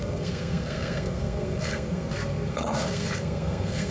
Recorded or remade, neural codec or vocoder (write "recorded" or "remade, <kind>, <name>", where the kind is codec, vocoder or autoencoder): remade, codec, SNAC